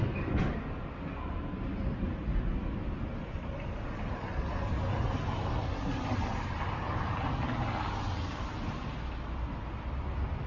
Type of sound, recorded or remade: recorded